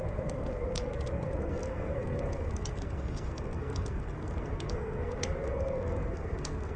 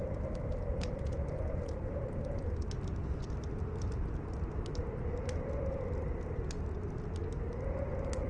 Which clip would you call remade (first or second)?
first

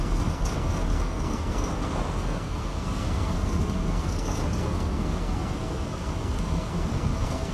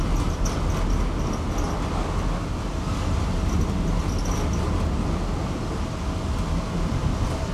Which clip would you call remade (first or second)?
first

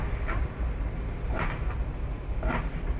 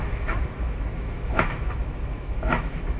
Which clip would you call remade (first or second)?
second